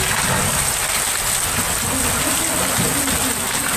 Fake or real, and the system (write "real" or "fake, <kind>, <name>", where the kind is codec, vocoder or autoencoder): real